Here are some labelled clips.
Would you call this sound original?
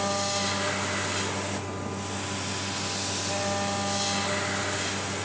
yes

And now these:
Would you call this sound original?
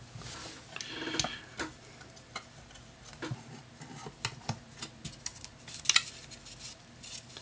yes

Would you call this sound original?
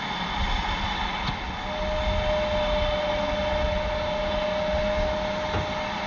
yes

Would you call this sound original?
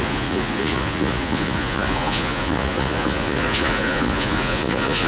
no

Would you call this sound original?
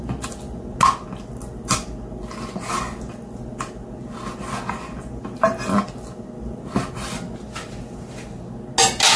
yes